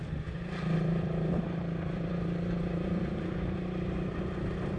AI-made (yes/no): yes